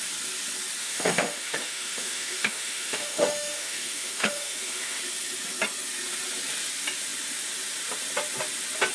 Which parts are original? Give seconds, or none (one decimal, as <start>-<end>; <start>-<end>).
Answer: 0.0-0.8; 5.0-8.9